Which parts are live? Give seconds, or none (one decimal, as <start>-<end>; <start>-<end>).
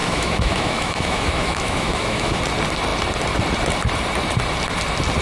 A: 2.4-5.2